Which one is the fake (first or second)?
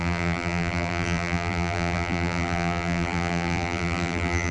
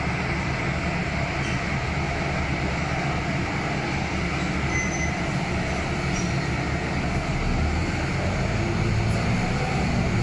first